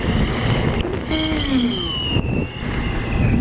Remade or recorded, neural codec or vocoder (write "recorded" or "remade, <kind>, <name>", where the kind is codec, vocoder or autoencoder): recorded